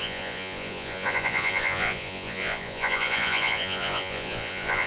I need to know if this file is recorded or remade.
remade